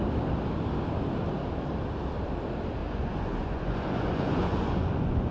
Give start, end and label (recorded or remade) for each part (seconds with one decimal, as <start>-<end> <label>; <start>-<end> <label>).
0.0-2.8 recorded; 2.8-5.3 remade